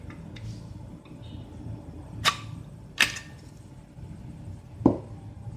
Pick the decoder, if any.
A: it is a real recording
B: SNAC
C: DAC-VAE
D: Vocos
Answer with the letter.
A